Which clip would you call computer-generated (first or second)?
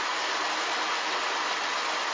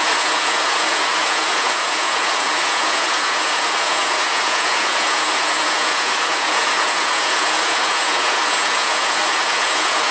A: second